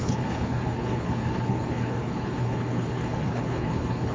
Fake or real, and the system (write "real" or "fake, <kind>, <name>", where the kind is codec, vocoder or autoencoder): fake, codec, HILCodec